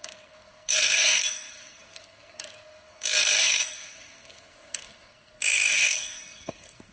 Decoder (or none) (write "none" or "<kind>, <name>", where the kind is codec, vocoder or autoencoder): codec, SNAC